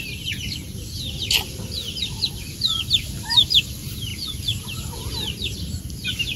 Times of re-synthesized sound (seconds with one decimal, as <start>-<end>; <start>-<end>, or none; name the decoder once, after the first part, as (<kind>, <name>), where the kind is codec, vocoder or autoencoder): 0.0-0.6 (vocoder, BigVGAN v2); 1.2-4.1; 5.1-6.4